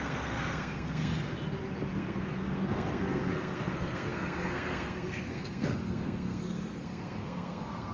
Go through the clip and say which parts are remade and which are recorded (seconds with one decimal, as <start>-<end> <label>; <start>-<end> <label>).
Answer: 0.0-1.1 remade; 1.1-1.9 recorded; 1.9-7.9 remade